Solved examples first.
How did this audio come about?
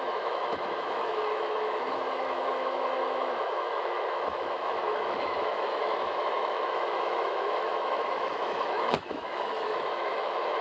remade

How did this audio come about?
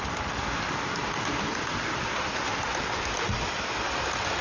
recorded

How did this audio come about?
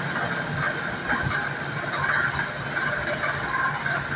recorded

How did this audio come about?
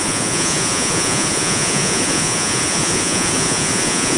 remade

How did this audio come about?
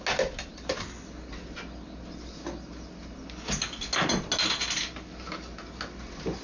recorded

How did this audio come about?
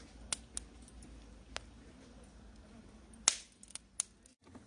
recorded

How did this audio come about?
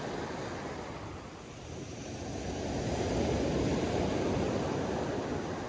recorded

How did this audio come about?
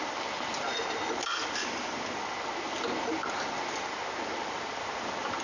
recorded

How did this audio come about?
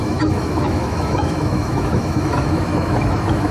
remade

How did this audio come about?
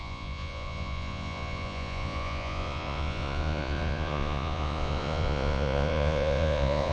remade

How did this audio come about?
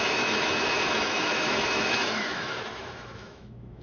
remade